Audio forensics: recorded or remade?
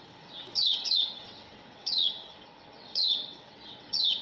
remade